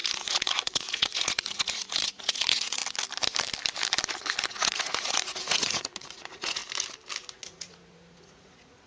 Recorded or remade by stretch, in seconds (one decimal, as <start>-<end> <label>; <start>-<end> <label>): 0.0-2.8 remade; 2.8-4.5 recorded; 4.5-6.6 remade; 6.6-7.3 recorded; 7.3-8.9 remade